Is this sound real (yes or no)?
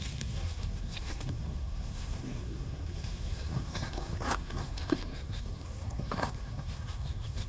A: no